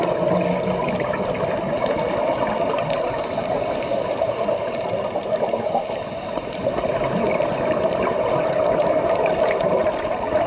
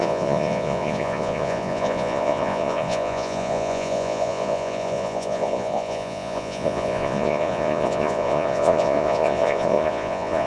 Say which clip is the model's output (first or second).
second